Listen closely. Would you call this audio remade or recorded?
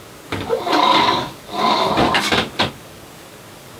remade